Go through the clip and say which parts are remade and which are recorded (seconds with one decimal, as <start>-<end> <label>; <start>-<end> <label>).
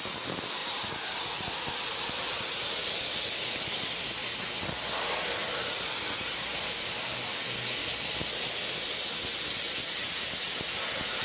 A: 0.0-0.6 recorded; 0.6-1.9 remade; 1.9-11.2 recorded